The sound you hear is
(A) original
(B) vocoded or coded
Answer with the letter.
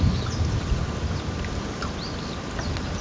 A